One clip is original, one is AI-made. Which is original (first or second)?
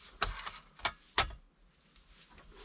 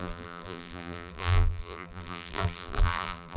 first